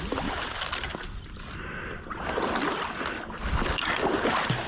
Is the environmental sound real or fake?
real